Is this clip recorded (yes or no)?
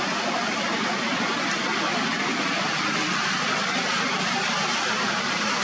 yes